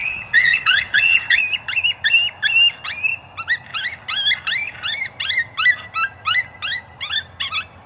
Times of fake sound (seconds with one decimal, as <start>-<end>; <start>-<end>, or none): 0.0-1.4